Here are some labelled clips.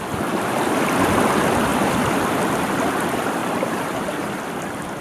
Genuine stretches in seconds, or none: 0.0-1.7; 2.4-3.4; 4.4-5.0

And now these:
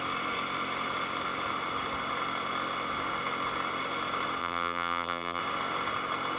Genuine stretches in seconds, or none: 0.0-4.4; 5.4-6.4